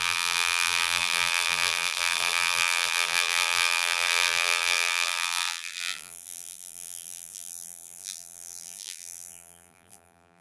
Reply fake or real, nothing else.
fake